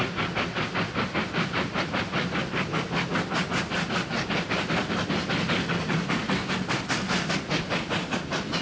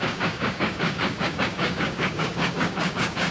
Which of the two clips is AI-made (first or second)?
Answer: second